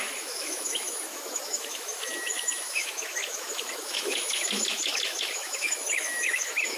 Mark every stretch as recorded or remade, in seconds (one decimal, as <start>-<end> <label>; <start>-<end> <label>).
0.0-6.8 remade

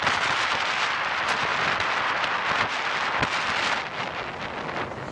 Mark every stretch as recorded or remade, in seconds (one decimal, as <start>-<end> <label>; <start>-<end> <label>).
0.0-5.1 recorded

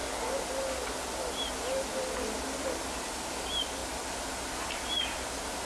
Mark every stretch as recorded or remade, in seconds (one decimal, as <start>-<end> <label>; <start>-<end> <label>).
0.0-5.6 recorded

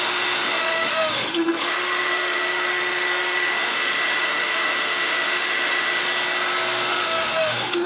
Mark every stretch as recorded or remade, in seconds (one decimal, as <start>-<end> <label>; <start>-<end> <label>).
0.0-6.1 remade; 6.1-6.9 recorded; 6.9-7.9 remade

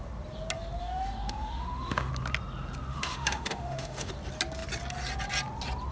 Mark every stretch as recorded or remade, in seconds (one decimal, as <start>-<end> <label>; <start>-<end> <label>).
0.0-0.8 recorded; 0.8-2.1 remade; 2.1-2.9 recorded; 2.9-4.1 remade; 4.1-5.9 recorded

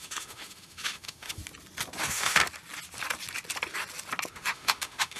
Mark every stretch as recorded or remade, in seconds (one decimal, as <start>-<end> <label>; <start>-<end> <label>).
0.0-1.4 remade; 1.4-2.0 recorded; 2.0-2.4 remade; 2.4-4.3 recorded; 4.3-5.2 remade

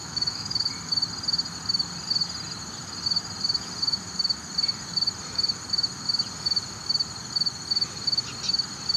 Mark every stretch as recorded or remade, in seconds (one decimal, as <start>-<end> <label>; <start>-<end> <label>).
0.0-0.7 remade; 0.7-9.0 recorded